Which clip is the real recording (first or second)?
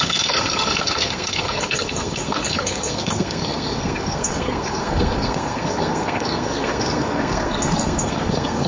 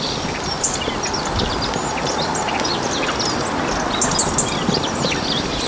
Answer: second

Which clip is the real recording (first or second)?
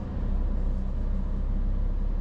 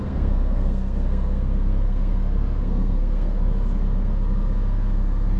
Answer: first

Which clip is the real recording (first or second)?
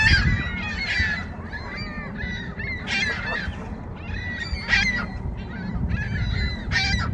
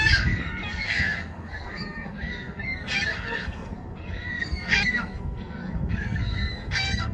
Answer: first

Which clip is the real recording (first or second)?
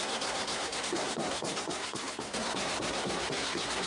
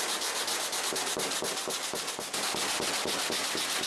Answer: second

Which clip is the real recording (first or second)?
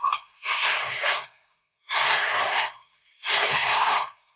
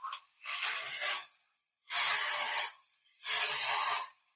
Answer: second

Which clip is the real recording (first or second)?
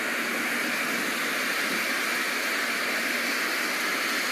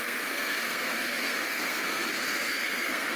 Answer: first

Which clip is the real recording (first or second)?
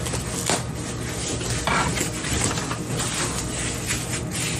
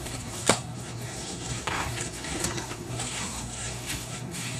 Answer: first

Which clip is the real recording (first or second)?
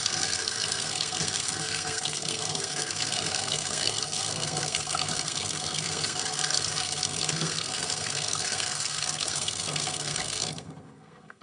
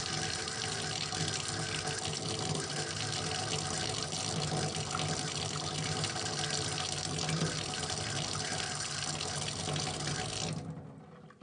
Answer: second